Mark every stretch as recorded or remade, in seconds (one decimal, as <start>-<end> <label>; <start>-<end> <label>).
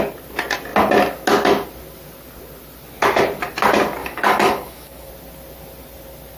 0.0-4.0 recorded; 4.0-5.1 remade; 5.1-6.4 recorded